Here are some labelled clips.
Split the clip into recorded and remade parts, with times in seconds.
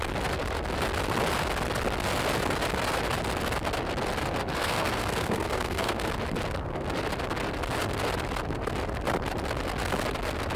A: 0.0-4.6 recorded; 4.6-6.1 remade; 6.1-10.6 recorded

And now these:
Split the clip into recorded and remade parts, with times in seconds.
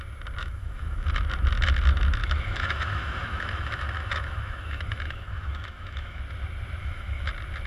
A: 0.0-0.4 recorded; 0.4-1.1 remade; 1.1-2.2 recorded; 2.2-6.2 remade; 6.2-6.8 recorded; 6.8-7.3 remade; 7.3-7.7 recorded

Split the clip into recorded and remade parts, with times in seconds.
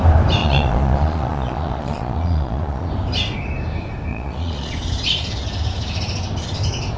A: 0.0-0.4 recorded; 0.4-2.9 remade; 2.9-4.1 recorded; 4.1-4.7 remade; 4.7-7.0 recorded